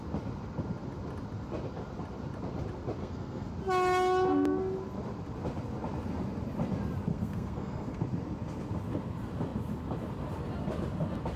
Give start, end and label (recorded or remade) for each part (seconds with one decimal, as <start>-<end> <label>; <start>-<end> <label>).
0.0-3.0 recorded; 3.0-3.5 remade; 3.5-7.1 recorded; 7.1-8.0 remade; 8.0-11.4 recorded